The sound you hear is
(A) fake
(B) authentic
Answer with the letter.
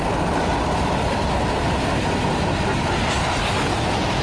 B